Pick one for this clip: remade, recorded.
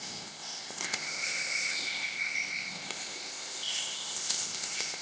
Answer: remade